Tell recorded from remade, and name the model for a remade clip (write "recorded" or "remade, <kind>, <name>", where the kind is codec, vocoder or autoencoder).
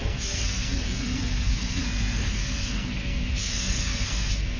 remade, codec, SNAC